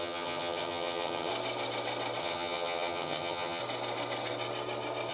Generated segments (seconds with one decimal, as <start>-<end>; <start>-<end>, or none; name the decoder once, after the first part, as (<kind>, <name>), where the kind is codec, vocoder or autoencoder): 0.0-1.3 (vocoder, HiFi-GAN); 2.2-3.6